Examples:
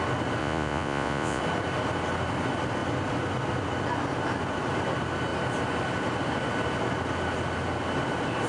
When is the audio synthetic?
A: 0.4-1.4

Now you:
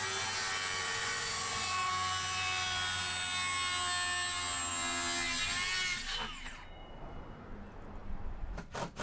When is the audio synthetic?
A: 1.0-1.9